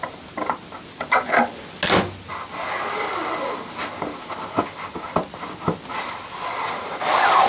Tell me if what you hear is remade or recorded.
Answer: recorded